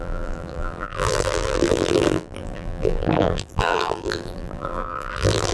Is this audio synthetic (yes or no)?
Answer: yes